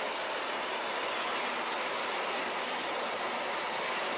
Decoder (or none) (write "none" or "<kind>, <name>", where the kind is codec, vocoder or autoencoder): none